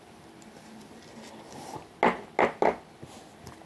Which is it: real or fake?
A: real